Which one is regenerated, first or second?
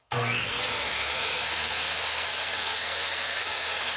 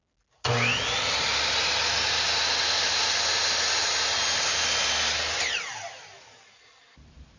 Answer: first